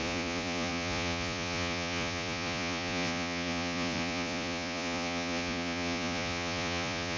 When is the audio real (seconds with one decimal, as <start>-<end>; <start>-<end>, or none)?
none